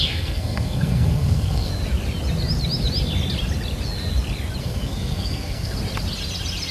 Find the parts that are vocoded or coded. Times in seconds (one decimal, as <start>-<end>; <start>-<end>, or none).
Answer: 0.0-1.7; 4.6-5.7